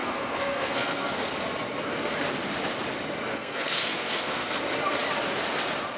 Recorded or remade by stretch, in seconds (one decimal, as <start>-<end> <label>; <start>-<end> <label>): 0.0-1.3 remade; 1.3-3.3 recorded; 3.3-4.6 remade; 4.6-6.0 recorded